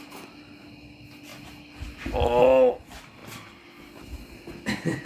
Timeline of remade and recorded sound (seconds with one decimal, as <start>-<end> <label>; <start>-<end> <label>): 0.0-5.1 recorded